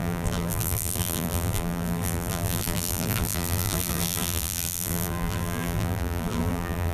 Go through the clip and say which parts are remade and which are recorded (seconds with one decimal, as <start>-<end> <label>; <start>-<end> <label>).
0.0-6.9 remade